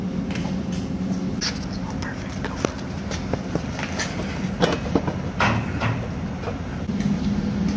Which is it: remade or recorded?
recorded